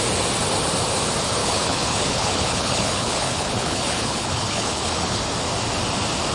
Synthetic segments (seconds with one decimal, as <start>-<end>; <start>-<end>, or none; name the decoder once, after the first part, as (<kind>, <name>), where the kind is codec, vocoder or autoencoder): 1.4-5.2 (codec, HILCodec)